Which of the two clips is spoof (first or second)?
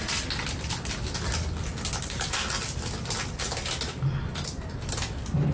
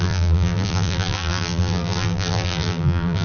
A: second